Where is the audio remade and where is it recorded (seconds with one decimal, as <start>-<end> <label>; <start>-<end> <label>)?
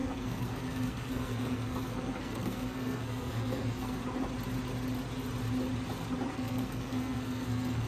0.0-4.0 remade; 4.0-6.3 recorded; 6.3-7.9 remade